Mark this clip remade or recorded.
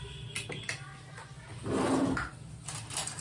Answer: recorded